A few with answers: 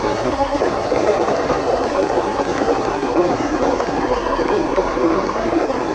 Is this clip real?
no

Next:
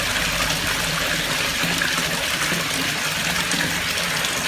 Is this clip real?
yes